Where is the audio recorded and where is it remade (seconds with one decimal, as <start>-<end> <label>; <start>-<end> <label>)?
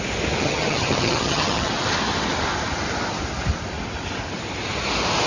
0.0-0.4 recorded; 0.4-1.7 remade; 1.7-5.3 recorded